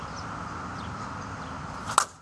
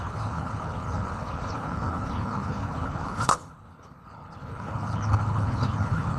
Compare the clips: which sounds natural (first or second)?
first